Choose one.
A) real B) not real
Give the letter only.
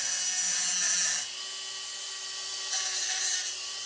A